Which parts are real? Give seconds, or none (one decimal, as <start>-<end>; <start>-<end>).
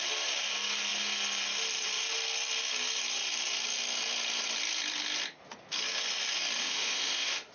0.0-6.6